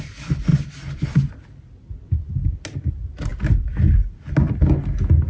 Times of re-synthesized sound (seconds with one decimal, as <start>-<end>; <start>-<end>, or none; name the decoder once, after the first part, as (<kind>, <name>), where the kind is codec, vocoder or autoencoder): none

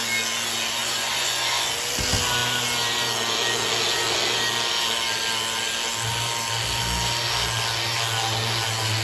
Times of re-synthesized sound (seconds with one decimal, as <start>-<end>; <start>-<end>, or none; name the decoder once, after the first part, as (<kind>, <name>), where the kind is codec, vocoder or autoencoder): 0.8-1.7 (vocoder, Vocos)